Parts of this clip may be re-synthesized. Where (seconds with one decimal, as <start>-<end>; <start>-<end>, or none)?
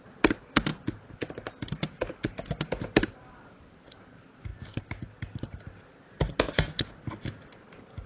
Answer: none